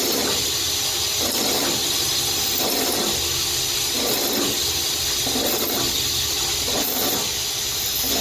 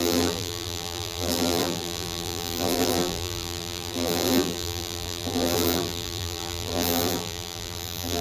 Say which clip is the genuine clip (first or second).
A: first